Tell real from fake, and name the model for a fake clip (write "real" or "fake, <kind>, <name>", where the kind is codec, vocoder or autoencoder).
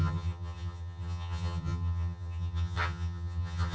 fake, vocoder, HiFi-GAN